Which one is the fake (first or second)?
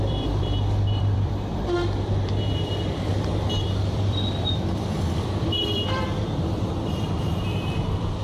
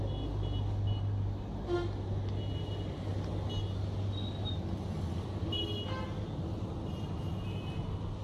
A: first